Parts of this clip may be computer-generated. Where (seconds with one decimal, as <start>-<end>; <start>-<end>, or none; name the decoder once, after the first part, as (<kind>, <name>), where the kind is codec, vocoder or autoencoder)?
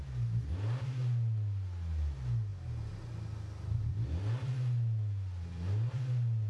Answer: none